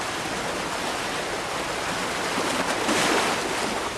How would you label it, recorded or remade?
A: recorded